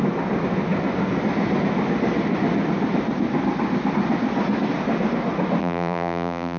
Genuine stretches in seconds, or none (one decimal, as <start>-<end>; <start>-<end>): 0.0-5.6